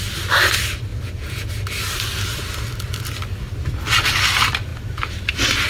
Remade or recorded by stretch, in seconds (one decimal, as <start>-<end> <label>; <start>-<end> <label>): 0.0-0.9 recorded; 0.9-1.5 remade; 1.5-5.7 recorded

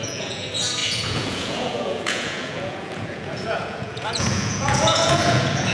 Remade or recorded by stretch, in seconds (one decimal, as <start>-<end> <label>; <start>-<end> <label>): 0.0-5.7 remade

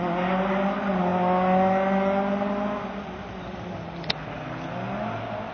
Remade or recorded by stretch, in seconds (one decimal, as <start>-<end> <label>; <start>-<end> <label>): 0.0-5.5 recorded